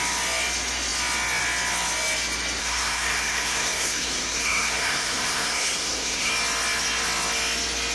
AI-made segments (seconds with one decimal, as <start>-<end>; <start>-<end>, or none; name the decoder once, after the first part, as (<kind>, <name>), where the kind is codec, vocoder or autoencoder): 2.6-6.3 (codec, SNAC)